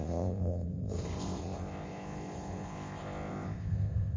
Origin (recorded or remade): remade